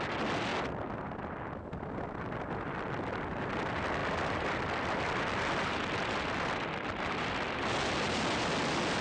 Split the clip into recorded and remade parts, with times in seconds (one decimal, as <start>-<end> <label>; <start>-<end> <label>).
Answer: 0.0-4.0 recorded; 4.0-7.7 remade; 7.7-9.0 recorded